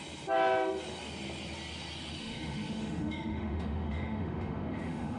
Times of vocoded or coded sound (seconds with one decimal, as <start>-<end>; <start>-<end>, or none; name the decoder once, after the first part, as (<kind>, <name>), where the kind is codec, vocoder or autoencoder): 2.2-5.2 (autoencoder, DAC-VAE)

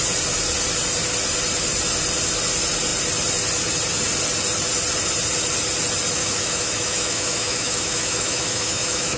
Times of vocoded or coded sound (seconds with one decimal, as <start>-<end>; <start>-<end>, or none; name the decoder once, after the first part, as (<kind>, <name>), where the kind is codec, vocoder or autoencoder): 6.2-9.2 (autoencoder, DAC-VAE)